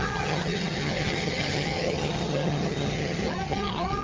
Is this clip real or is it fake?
fake